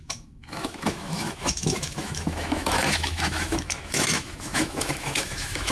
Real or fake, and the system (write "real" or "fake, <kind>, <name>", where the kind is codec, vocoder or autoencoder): fake, autoencoder, DAC-VAE